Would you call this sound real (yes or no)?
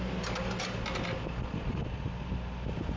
yes